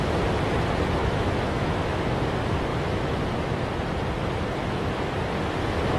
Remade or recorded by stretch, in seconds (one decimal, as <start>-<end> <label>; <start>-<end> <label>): 0.0-1.0 recorded; 1.0-2.0 remade; 2.0-2.7 recorded; 2.7-3.2 remade; 3.2-4.6 recorded; 4.6-5.1 remade; 5.1-6.0 recorded